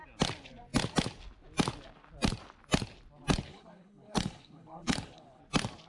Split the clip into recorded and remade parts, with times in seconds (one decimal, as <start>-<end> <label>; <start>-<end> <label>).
0.0-3.5 recorded; 3.5-5.4 remade; 5.4-5.9 recorded